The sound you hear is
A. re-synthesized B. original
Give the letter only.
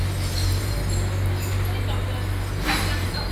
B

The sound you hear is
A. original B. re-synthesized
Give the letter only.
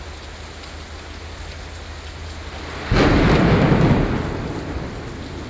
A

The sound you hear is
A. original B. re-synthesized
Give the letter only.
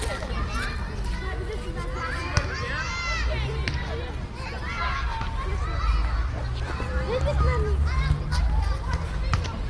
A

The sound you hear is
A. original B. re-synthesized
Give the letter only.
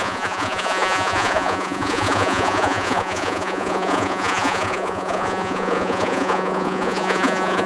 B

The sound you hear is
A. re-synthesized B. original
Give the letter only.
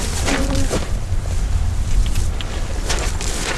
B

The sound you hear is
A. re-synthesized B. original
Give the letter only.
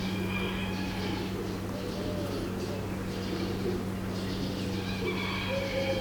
B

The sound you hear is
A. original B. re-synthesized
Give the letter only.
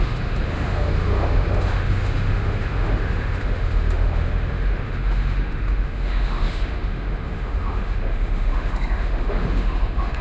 B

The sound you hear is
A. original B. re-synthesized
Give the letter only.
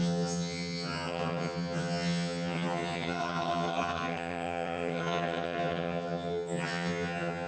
B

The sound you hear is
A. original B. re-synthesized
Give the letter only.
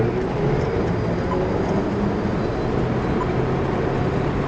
A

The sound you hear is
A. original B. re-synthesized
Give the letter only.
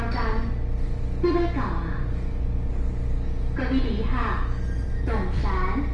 A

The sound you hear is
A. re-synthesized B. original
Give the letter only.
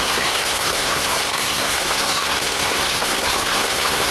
A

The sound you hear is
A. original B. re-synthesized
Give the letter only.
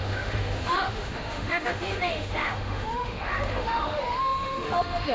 B